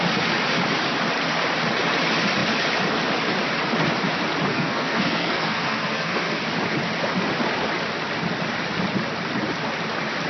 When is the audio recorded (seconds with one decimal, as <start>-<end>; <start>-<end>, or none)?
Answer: 0.0-4.5; 6.4-10.3